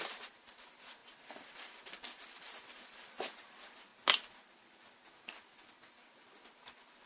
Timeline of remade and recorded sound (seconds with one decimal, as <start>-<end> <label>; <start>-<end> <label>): 0.0-7.1 recorded